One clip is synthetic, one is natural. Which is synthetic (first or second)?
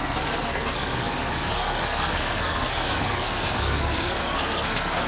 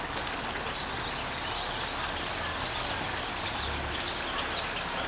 first